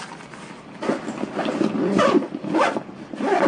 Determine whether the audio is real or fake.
real